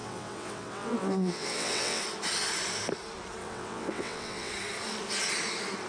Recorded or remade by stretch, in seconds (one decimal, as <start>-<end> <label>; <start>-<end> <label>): 0.0-2.0 remade; 2.0-3.4 recorded; 3.4-4.5 remade; 4.5-5.9 recorded